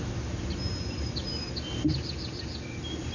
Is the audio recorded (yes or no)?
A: yes